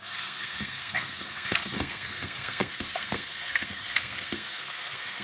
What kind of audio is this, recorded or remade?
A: remade